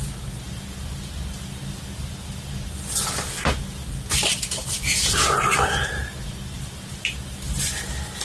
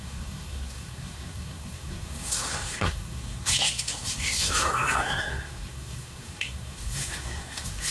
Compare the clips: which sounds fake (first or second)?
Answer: second